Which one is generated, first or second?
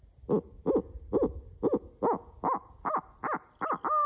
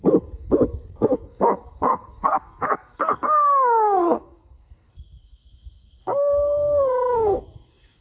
second